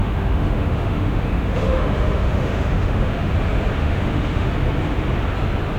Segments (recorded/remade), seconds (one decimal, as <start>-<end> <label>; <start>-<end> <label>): 0.0-3.3 remade; 3.3-3.8 recorded; 3.8-4.5 remade; 4.5-5.8 recorded